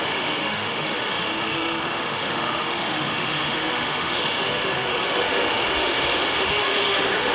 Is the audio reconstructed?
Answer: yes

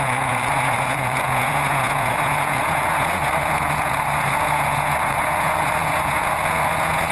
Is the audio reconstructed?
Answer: yes